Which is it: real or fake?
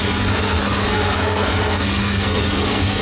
fake